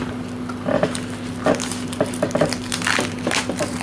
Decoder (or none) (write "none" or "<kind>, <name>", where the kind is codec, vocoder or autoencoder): vocoder, BigVGAN v2